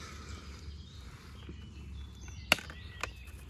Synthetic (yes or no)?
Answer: no